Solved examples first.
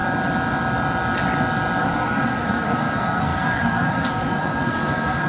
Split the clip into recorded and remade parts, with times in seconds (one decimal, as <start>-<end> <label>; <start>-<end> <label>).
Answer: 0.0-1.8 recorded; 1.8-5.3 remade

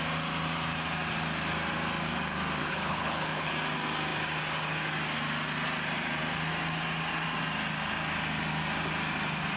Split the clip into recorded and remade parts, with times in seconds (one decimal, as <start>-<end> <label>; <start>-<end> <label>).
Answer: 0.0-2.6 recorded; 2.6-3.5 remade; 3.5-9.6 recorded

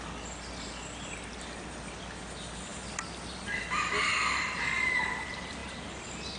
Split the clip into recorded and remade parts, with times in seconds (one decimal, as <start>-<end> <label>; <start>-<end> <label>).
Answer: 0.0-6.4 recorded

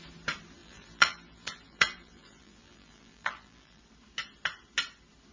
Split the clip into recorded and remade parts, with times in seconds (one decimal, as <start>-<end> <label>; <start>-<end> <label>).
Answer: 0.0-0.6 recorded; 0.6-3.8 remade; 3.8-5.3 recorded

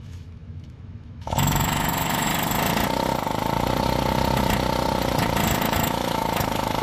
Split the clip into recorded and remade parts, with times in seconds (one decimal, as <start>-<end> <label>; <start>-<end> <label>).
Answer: 0.0-2.3 remade; 2.3-5.6 recorded; 5.6-6.8 remade

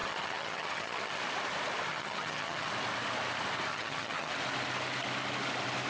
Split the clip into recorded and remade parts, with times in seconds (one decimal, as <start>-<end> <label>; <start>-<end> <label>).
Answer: 0.0-1.2 remade; 1.2-1.9 recorded; 1.9-2.7 remade; 2.7-3.7 recorded; 3.7-4.3 remade; 4.3-5.9 recorded

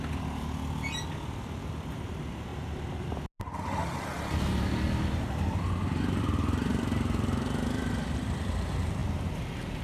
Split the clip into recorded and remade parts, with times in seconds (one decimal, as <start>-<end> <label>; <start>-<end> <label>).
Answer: 0.0-9.8 recorded

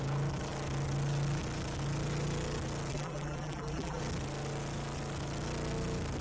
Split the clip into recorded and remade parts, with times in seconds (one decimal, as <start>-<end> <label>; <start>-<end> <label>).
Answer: 0.0-2.9 recorded; 2.9-4.0 remade; 4.0-6.2 recorded